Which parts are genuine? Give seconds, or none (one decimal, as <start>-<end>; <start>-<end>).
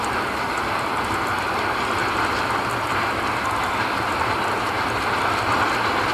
0.0-6.1